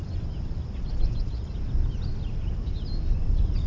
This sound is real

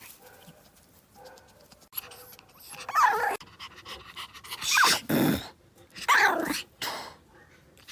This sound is real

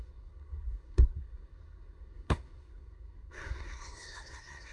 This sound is fake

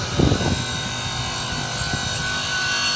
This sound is real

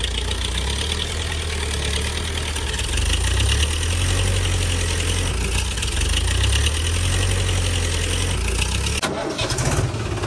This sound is real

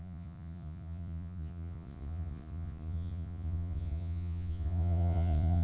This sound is fake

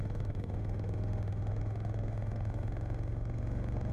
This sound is fake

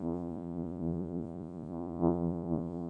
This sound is fake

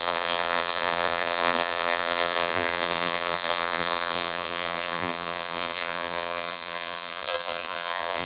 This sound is fake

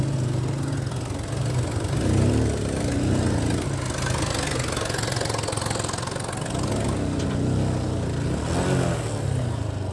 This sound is real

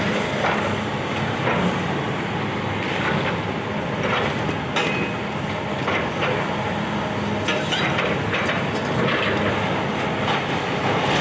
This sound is real